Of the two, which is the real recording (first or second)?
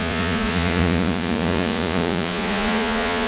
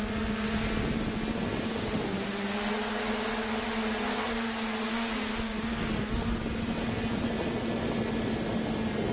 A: second